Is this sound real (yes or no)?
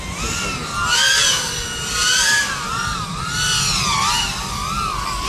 yes